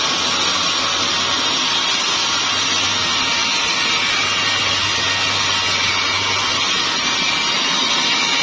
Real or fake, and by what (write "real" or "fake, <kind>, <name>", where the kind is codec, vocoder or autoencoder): real